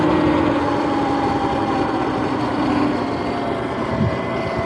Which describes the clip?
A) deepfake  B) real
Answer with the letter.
A